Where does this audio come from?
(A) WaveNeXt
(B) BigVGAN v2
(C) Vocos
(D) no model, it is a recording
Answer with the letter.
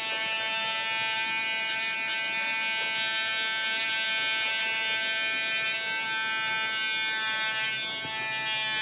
D